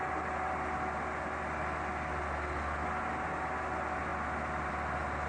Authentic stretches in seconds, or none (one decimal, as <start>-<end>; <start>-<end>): 0.0-5.3